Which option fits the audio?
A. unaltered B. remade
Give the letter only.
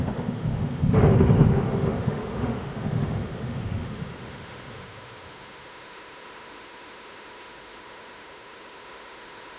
B